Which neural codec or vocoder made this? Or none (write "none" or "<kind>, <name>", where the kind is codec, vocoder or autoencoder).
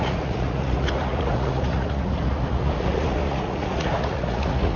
vocoder, Vocos